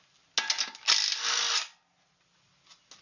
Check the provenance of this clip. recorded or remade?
recorded